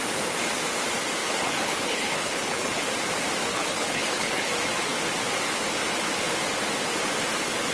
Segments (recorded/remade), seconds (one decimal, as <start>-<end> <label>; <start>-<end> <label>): 0.0-1.2 recorded; 1.2-2.9 remade; 2.9-3.5 recorded; 3.5-4.5 remade; 4.5-7.7 recorded